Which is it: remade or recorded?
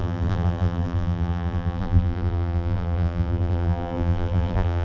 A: remade